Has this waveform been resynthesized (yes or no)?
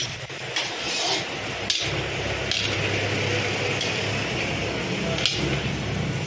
no